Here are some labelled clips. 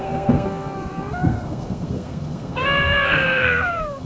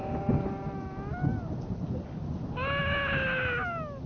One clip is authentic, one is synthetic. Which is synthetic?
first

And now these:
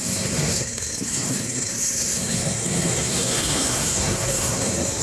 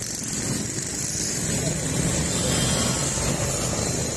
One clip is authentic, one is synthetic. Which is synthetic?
first